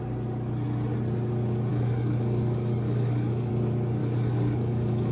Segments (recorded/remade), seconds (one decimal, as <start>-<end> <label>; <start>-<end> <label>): 0.0-1.7 recorded; 1.7-3.5 remade; 3.5-4.0 recorded; 4.0-5.1 remade